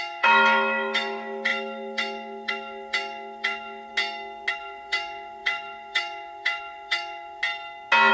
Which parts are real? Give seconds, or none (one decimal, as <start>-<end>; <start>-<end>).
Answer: 3.9-4.5; 7.4-8.1